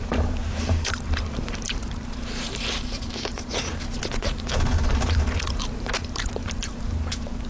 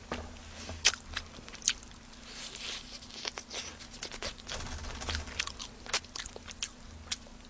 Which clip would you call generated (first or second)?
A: first